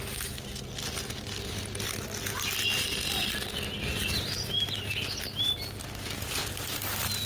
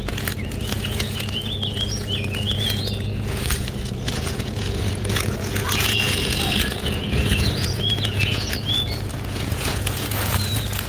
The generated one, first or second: second